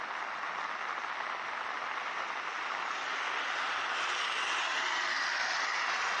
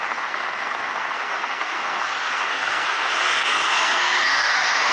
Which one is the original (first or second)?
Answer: first